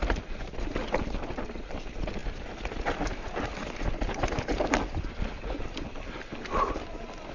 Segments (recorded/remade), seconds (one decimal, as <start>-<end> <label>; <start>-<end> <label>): 0.0-7.3 recorded